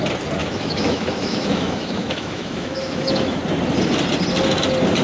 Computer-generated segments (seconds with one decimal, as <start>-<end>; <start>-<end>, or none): 0.4-3.4